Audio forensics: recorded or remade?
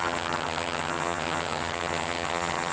remade